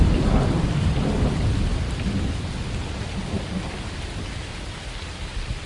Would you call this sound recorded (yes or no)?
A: yes